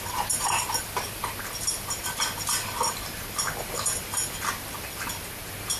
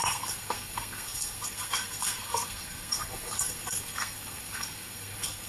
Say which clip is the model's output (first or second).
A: second